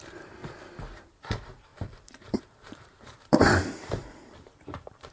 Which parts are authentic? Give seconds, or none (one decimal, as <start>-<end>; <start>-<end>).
0.4-1.2